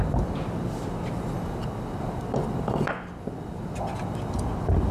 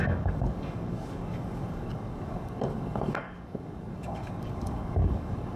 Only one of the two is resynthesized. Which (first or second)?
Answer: second